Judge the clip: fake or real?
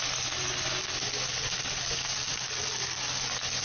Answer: real